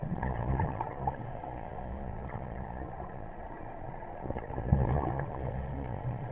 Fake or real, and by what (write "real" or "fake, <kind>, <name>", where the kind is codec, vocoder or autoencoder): fake, vocoder, Vocos